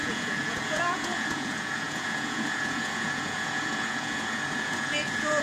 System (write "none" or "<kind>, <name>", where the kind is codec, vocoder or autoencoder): vocoder, Vocos